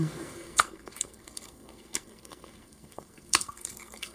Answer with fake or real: fake